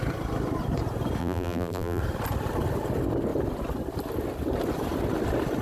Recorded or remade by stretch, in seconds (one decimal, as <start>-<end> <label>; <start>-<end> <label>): 0.0-1.2 recorded; 1.2-2.0 remade; 2.0-5.6 recorded